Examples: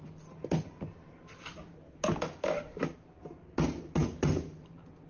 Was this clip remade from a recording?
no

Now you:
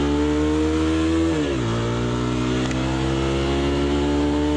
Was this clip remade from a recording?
no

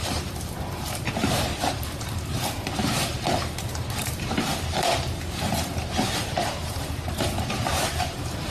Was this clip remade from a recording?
yes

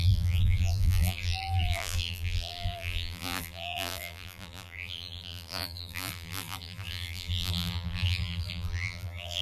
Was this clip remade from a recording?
yes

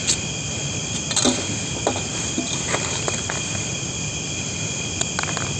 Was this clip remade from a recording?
no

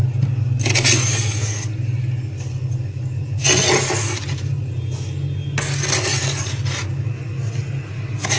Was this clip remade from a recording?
no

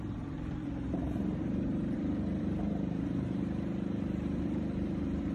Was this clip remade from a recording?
yes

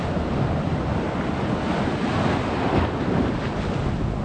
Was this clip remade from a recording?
no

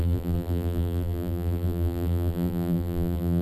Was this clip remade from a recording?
yes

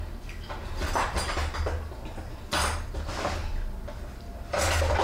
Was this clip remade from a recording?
no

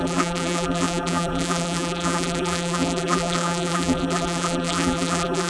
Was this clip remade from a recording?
yes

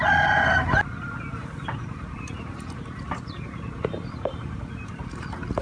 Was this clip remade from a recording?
yes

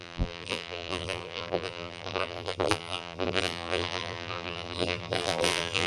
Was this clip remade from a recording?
yes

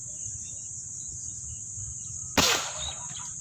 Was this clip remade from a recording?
no